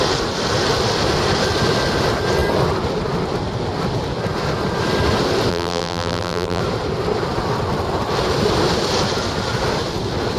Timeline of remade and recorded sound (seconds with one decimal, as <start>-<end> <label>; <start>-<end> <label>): 0.0-5.5 recorded; 5.5-6.6 remade; 6.6-10.4 recorded